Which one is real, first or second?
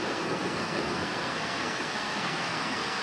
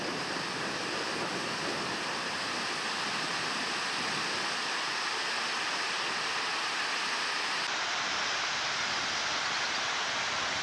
second